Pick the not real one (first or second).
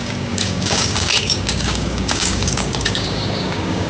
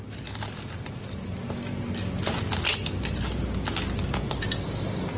first